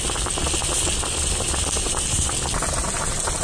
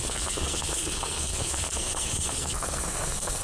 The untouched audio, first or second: first